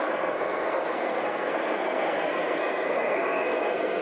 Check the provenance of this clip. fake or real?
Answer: fake